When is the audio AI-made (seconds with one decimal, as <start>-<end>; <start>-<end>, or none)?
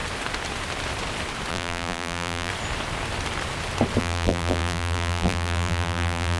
1.5-2.5; 4.0-6.4